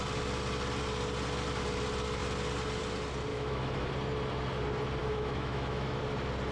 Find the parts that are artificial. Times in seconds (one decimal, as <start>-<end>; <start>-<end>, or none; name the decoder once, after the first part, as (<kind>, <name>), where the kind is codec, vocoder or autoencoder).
3.3-3.9 (autoencoder, DAC-VAE); 5.0-6.0